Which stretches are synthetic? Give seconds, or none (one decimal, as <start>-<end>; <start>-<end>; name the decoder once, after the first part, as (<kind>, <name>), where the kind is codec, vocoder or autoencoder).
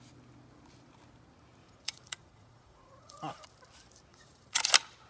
1.6-3.5 (vocoder, Vocos); 4.1-4.6